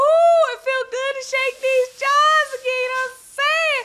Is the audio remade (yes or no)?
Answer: no